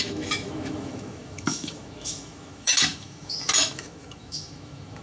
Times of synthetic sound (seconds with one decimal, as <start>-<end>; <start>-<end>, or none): 0.0-5.0